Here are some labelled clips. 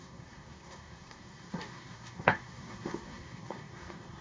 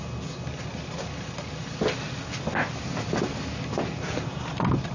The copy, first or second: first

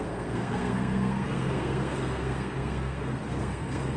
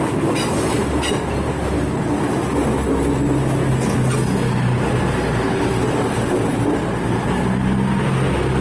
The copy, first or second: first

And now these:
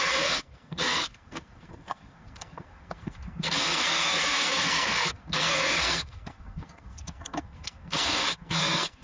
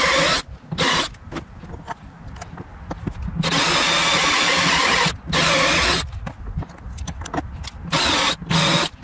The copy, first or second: first